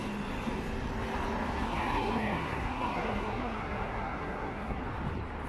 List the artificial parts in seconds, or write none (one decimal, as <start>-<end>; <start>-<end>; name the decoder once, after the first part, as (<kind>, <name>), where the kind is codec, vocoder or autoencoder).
1.5-4.8 (codec, SNAC)